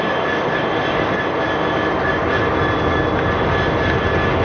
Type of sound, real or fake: real